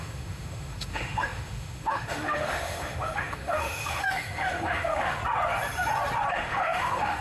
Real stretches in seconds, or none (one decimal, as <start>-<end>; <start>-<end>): 5.2-6.3